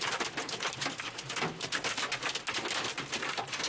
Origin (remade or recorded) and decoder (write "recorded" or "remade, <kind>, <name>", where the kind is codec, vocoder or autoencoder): recorded